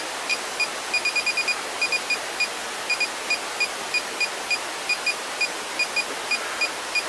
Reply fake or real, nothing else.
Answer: real